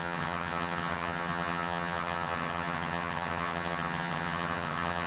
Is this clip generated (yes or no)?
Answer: yes